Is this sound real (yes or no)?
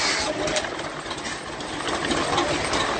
yes